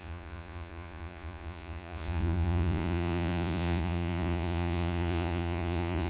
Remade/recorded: remade